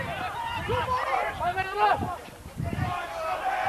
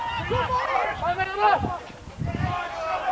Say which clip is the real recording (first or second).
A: second